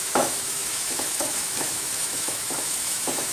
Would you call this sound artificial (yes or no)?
yes